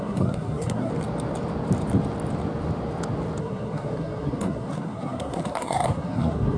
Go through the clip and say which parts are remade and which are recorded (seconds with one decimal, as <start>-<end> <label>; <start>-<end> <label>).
0.0-0.9 remade; 0.9-3.4 recorded; 3.4-6.6 remade

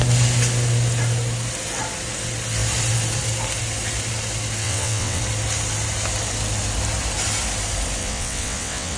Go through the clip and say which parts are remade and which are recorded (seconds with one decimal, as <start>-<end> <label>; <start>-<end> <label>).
0.0-4.6 recorded; 4.6-5.2 remade; 5.2-8.0 recorded; 8.0-9.0 remade

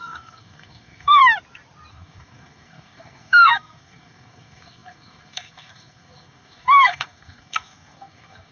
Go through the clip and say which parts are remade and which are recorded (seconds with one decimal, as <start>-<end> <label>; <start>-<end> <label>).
0.0-1.2 remade; 1.2-1.9 recorded; 1.9-8.5 remade

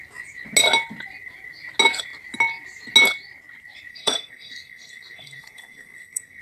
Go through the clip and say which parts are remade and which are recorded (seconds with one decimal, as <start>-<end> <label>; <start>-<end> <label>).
0.0-3.9 recorded; 3.9-6.4 remade

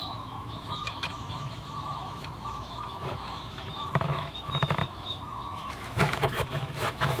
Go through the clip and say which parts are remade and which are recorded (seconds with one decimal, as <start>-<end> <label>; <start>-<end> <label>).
0.0-7.2 remade

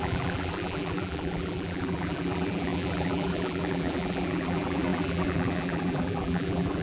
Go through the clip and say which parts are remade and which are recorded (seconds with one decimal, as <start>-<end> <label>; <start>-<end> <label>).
0.0-6.8 remade

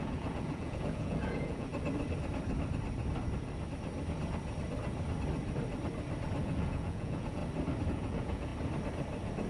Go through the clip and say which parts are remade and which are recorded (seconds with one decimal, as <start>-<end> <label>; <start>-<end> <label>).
0.0-1.7 remade; 1.7-6.4 recorded; 6.4-7.4 remade; 7.4-7.9 recorded; 7.9-8.5 remade; 8.5-9.5 recorded

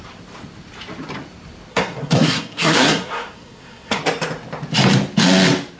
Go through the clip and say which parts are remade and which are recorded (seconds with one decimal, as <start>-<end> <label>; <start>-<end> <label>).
0.0-1.7 recorded; 1.7-4.0 remade; 4.0-5.8 recorded